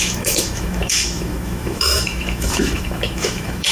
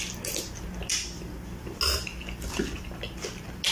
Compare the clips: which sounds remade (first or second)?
first